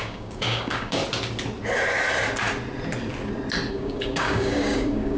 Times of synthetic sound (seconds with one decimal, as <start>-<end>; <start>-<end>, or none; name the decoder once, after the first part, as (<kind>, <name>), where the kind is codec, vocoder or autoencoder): 0.0-1.0 (codec, DAC); 3.7-5.2